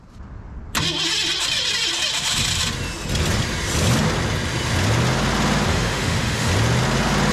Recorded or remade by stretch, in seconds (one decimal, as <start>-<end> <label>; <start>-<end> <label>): 0.0-5.7 recorded; 5.7-6.5 remade; 6.5-7.3 recorded